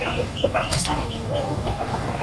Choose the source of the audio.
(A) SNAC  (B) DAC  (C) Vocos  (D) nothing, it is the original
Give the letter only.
B